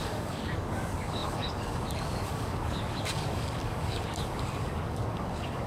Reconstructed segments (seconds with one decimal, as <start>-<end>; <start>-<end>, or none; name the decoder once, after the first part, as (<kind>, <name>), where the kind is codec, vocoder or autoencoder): 0.0-5.7 (codec, DAC)

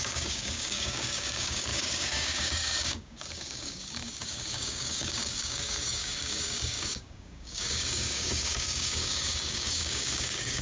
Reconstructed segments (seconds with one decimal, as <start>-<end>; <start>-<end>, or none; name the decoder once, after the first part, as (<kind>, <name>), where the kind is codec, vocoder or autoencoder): 0.0-10.6 (codec, DAC)